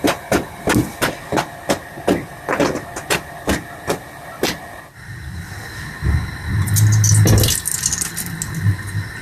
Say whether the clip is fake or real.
real